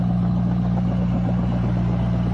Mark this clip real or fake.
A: real